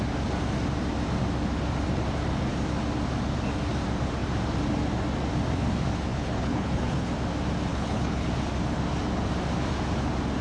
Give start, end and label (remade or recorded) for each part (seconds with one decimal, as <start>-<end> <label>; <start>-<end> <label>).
0.0-6.1 recorded; 6.1-7.1 remade; 7.1-7.7 recorded; 7.7-8.3 remade; 8.3-10.4 recorded